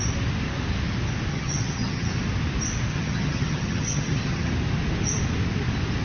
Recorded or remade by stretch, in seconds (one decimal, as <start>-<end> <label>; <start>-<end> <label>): 0.0-1.3 recorded; 1.3-2.1 remade; 2.1-2.9 recorded; 2.9-4.5 remade; 4.5-6.0 recorded